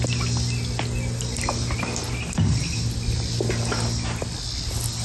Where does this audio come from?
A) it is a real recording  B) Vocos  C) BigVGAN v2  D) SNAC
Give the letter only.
A